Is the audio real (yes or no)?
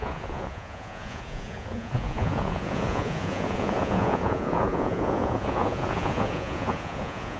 no